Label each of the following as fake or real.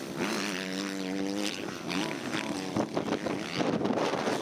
real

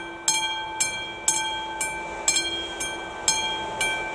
real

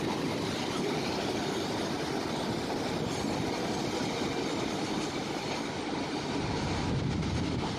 real